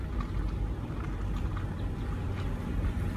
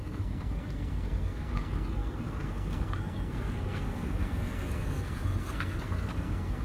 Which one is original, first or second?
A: first